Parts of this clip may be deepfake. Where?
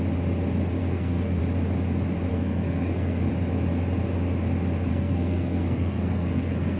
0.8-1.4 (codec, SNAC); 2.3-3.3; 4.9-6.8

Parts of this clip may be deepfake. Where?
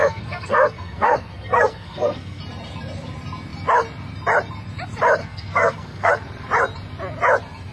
0.0-2.4 (codec, SNAC); 5.2-6.1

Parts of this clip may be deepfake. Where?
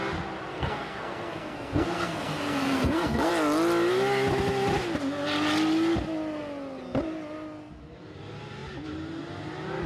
0.5-3.3 (codec, SNAC)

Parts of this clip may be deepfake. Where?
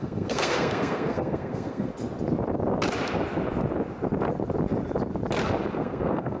0.0-1.9 (codec, SNAC); 5.7-6.4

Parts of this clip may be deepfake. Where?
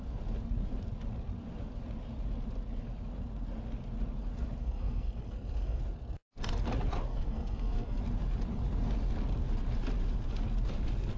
4.6-5.8 (codec, SNAC); 7.1-8.0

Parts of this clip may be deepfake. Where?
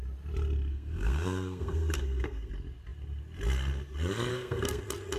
0.7-2.5 (codec, SNAC); 4.3-4.8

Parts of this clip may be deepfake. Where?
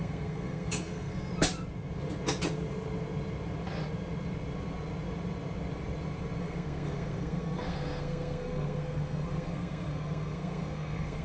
0.0-1.3 (codec, SNAC); 6.4-11.2